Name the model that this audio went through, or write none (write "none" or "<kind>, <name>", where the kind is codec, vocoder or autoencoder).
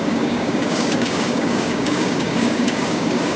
codec, DAC